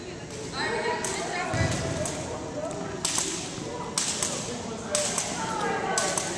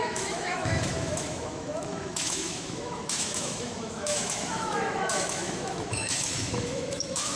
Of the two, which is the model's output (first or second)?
second